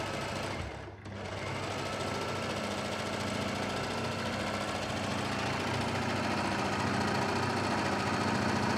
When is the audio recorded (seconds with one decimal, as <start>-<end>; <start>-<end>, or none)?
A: 0.0-8.8